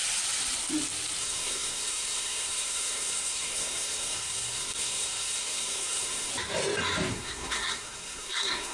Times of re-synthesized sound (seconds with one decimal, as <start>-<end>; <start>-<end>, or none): 1.2-6.3; 7.1-8.7